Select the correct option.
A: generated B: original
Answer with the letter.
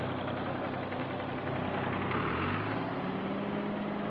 B